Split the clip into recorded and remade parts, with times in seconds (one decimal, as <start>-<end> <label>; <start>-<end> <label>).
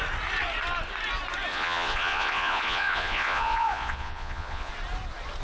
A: 0.0-1.5 recorded; 1.5-4.7 remade; 4.7-5.4 recorded